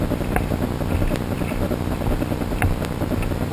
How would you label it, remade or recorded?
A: recorded